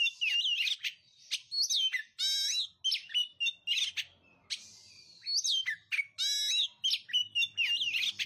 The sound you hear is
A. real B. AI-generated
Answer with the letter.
A